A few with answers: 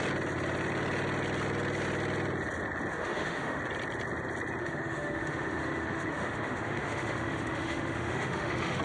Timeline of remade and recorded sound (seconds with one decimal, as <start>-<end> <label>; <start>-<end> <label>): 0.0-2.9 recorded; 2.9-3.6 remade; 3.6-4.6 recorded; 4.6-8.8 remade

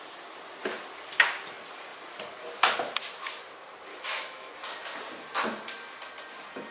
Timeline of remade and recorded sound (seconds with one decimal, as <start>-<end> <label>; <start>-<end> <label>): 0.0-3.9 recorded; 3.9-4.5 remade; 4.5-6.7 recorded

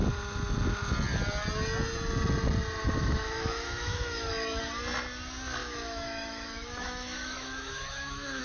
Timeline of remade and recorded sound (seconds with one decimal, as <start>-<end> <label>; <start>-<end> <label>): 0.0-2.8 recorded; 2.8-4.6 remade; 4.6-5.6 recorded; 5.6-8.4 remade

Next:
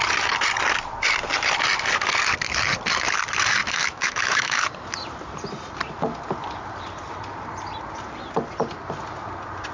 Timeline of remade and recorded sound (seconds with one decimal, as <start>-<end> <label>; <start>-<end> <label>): 0.0-3.6 recorded; 3.6-4.6 remade; 4.6-9.7 recorded

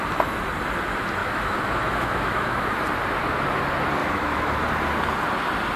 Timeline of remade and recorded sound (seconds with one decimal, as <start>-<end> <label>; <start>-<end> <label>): 0.0-1.2 recorded; 1.2-2.7 remade; 2.7-4.0 recorded; 4.0-4.6 remade; 4.6-5.8 recorded

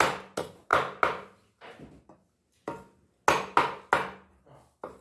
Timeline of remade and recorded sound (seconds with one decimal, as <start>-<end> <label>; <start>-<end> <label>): 0.0-5.0 recorded